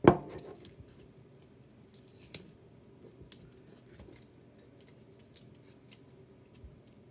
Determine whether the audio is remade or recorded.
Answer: recorded